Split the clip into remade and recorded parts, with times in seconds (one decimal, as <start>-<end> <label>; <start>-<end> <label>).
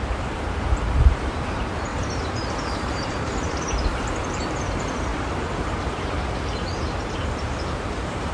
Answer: 0.0-8.3 remade